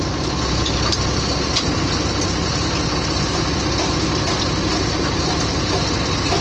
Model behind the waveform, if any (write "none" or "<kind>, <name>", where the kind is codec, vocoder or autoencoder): vocoder, BigVGAN v2